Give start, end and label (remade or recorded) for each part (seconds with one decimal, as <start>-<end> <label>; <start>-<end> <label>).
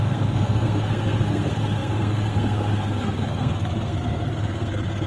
0.0-5.1 remade